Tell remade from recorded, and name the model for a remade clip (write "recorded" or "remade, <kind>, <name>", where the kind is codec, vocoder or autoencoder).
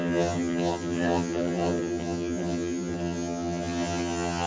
remade, vocoder, HiFi-GAN